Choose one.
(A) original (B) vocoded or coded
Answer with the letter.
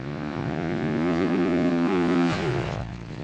B